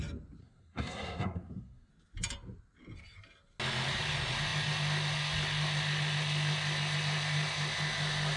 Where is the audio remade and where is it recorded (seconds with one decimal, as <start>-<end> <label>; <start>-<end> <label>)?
0.0-0.4 recorded; 0.4-1.9 remade; 1.9-8.4 recorded